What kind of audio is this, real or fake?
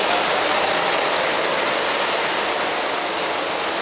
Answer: real